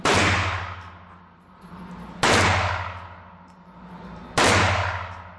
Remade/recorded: recorded